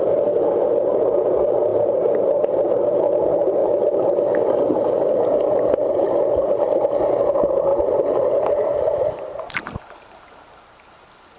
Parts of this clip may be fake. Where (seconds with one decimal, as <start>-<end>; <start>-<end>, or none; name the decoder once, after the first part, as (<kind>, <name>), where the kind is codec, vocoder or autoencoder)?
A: none